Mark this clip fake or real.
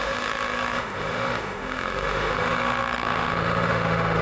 fake